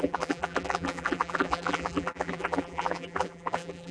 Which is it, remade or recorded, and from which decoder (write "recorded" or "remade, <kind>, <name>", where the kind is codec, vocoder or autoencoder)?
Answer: remade, vocoder, BigVGAN v2